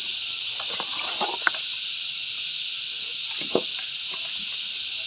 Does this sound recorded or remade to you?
recorded